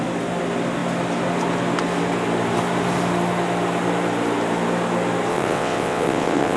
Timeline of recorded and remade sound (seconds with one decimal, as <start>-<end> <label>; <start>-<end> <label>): 0.0-5.3 recorded; 5.3-6.6 remade